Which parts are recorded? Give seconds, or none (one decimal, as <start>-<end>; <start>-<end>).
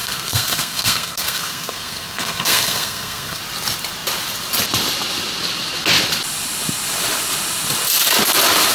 3.4-8.7